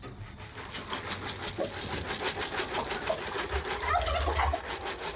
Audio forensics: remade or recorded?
recorded